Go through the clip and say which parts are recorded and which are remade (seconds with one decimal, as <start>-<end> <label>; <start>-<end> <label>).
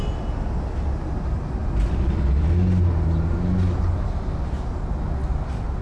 0.0-5.8 recorded